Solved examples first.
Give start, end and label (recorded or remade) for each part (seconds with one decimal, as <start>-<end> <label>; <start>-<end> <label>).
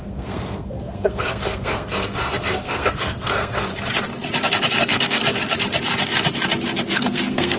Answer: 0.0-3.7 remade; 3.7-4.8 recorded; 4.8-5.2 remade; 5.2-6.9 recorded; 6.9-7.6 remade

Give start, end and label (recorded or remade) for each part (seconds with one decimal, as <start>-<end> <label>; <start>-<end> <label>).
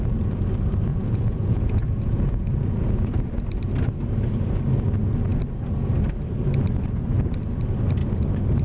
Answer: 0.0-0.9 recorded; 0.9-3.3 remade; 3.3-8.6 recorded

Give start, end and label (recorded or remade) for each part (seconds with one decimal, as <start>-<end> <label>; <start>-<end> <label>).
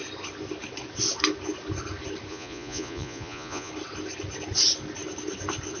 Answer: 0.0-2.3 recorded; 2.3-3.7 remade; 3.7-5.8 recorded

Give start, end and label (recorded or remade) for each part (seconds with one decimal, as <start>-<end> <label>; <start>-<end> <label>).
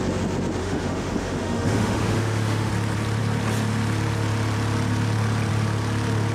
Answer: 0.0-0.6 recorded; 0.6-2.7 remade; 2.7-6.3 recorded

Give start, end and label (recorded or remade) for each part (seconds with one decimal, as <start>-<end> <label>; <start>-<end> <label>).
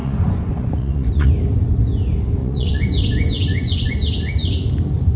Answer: 0.0-1.3 remade; 1.3-2.4 recorded; 2.4-3.9 remade; 3.9-5.2 recorded